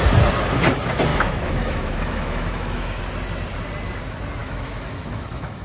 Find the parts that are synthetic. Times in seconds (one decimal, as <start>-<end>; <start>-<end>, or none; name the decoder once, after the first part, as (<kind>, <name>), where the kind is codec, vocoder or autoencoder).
1.1-3.0 (autoencoder, DAC-VAE); 4.4-5.6